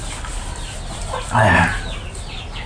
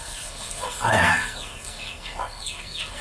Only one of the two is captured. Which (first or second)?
first